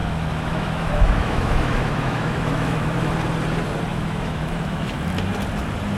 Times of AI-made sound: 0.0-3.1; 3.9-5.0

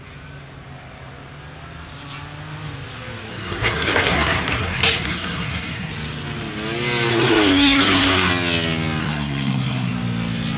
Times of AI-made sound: 3.3-5.9; 7.1-8.3; 9.0-9.9

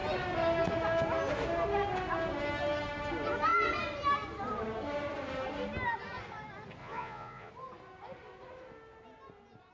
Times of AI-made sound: 6.8-7.5

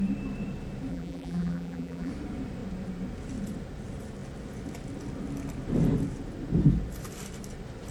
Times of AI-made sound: 0.9-2.1

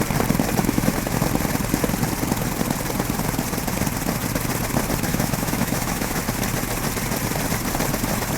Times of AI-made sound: 0.6-1.2; 5.1-6.2